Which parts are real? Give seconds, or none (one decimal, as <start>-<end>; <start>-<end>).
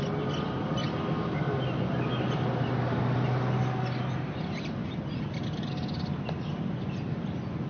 0.0-7.7